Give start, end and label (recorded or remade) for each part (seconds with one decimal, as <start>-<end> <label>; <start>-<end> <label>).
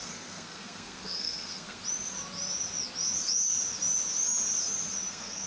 0.0-1.8 remade; 1.8-5.1 recorded; 5.1-5.5 remade